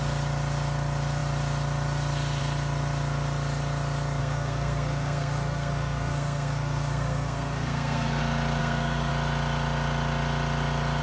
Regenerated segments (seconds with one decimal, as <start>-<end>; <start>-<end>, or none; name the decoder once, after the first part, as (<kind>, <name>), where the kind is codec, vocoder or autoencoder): 4.2-8.2 (codec, SNAC); 8.6-9.1